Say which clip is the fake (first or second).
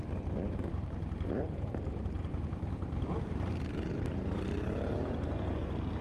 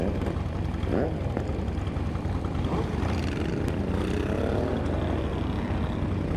first